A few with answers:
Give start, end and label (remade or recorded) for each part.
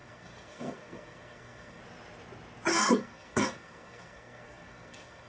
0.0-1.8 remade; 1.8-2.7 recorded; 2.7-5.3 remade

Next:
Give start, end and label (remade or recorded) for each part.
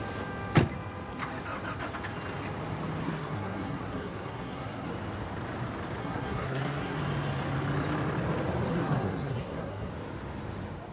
0.0-3.0 recorded; 3.0-4.9 remade; 4.9-6.0 recorded; 6.0-7.0 remade; 7.0-8.7 recorded; 8.7-9.9 remade; 9.9-10.9 recorded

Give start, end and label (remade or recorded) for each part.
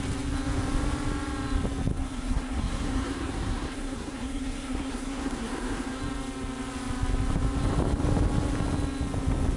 0.0-1.9 recorded; 1.9-6.0 remade; 6.0-9.6 recorded